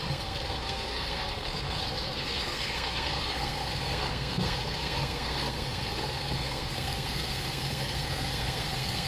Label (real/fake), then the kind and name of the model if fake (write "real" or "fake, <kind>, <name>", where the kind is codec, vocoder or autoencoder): fake, codec, SNAC